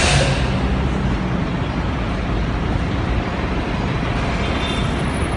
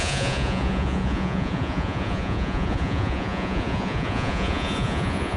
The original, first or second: first